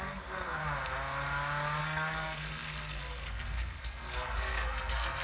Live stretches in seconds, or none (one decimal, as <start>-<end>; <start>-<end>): 0.6-1.8